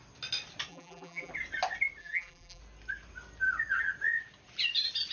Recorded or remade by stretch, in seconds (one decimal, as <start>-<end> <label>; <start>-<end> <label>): 0.0-0.7 recorded; 0.7-1.3 remade; 1.3-2.0 recorded; 2.0-2.6 remade; 2.6-5.1 recorded